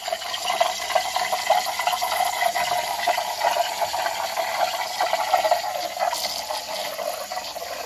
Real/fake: real